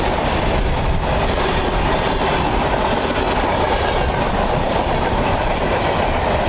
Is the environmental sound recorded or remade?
recorded